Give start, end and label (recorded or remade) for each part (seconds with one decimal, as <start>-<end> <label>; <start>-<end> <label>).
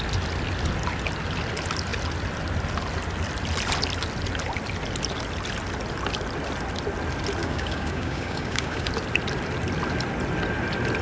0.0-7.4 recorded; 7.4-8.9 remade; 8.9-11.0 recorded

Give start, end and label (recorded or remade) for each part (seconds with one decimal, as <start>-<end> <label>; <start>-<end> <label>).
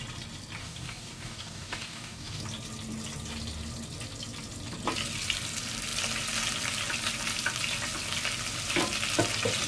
0.0-0.6 recorded; 0.6-2.4 remade; 2.4-9.7 recorded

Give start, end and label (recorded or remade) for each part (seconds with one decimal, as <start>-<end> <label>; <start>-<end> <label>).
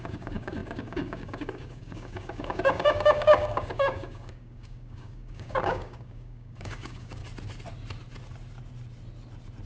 0.0-7.2 remade; 7.2-9.7 recorded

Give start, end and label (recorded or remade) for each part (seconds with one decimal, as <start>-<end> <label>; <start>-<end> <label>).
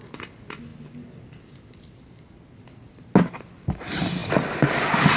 0.0-5.2 recorded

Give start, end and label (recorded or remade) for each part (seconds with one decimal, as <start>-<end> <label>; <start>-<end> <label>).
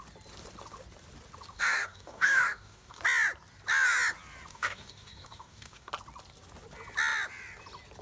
0.0-1.5 recorded; 1.5-3.0 remade; 3.0-4.5 recorded; 4.5-5.9 remade; 5.9-8.0 recorded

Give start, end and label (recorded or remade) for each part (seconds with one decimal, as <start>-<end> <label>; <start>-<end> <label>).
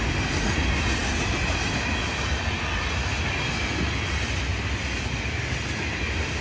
0.0-6.4 recorded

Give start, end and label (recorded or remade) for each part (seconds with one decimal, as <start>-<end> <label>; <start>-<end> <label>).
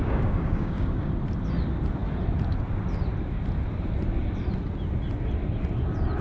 0.0-1.1 remade; 1.1-6.2 recorded